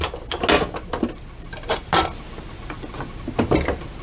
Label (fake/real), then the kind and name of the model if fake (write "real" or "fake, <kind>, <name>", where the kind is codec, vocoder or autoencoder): real